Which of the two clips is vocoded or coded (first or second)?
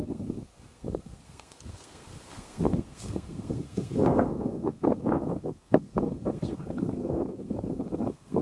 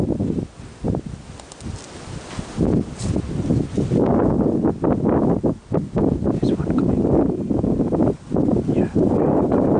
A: first